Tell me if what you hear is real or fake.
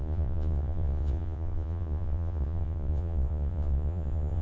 fake